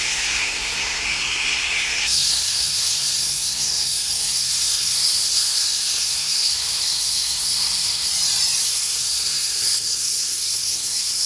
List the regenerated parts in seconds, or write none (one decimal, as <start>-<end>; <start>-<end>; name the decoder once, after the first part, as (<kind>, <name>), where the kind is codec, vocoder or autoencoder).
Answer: 0.0-8.1 (codec, SNAC); 8.6-11.3